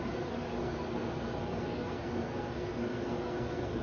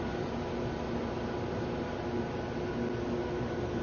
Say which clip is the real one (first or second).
second